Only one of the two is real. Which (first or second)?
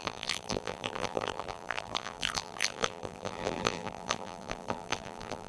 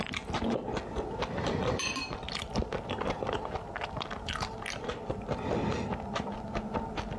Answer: second